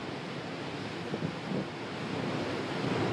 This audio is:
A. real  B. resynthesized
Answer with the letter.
A